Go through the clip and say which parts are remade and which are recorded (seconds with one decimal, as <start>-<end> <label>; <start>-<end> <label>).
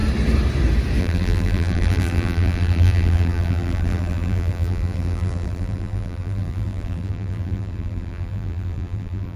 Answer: 0.0-1.0 recorded; 1.0-9.4 remade